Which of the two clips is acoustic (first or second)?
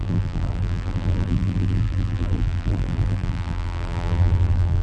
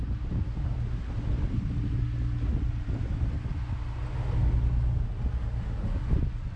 second